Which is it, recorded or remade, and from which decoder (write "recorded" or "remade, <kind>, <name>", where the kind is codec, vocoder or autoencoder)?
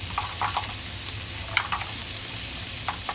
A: recorded